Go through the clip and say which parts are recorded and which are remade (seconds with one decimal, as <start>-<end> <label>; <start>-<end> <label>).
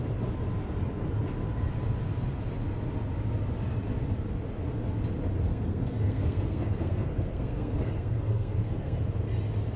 0.0-5.5 recorded; 5.5-9.0 remade; 9.0-9.8 recorded